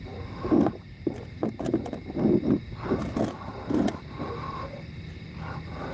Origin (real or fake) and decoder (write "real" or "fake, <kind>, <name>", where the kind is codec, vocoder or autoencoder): real